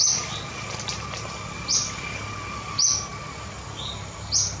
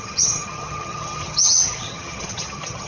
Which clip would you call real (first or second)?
first